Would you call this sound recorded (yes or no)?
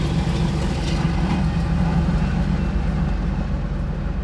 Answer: yes